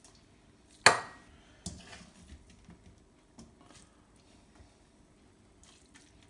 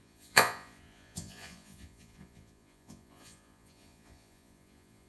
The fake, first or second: second